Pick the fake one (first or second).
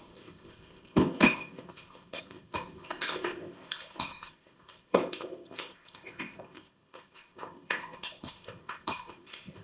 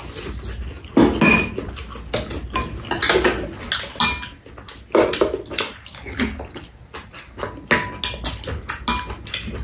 first